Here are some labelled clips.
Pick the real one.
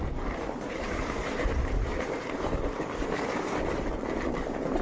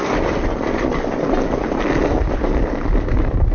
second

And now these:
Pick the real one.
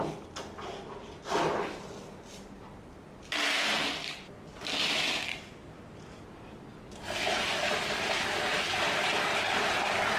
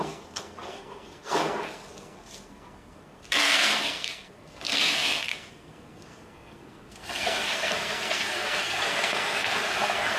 first